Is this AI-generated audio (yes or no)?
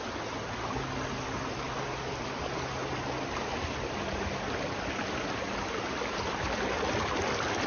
no